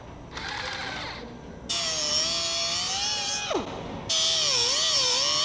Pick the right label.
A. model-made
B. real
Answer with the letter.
B